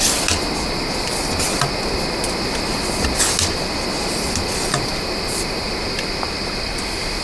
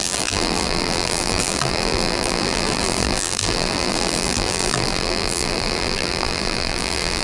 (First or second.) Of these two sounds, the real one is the first